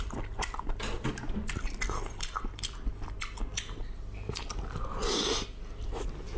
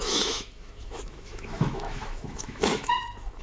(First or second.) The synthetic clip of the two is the second